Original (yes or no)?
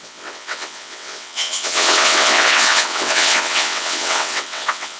no